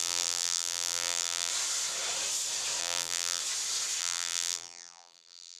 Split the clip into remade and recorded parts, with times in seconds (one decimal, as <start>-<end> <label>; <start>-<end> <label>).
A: 0.0-1.5 remade; 1.5-2.8 recorded; 2.8-3.4 remade; 3.4-4.0 recorded; 4.0-5.6 remade